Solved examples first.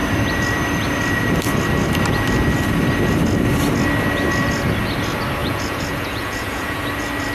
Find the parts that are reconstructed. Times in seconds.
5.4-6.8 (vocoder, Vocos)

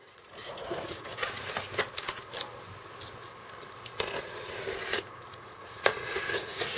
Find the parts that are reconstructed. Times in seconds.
0.0-1.1 (vocoder, Vocos); 5.2-6.8

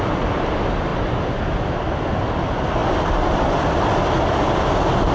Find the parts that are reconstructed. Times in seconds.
none

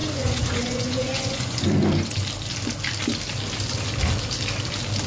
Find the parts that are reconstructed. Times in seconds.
0.0-1.6 (vocoder, Vocos)

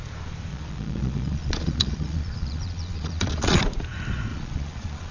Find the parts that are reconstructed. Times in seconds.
0.5-3.6 (vocoder, Vocos); 4.3-5.1

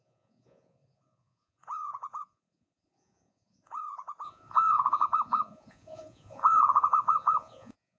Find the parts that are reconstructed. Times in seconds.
0.0-8.0 (vocoder, Vocos)